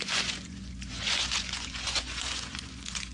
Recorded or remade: remade